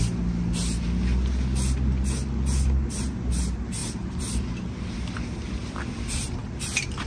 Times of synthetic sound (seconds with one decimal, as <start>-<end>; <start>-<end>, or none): 3.8-4.5